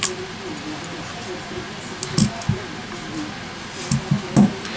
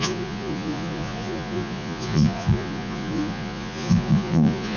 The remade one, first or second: second